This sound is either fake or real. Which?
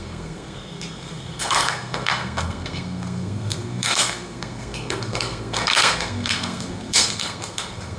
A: fake